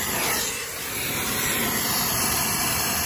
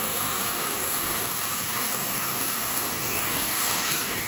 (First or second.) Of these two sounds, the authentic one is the first